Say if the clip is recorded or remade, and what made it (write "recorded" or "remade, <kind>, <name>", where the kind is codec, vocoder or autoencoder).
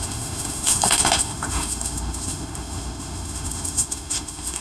remade, autoencoder, DAC-VAE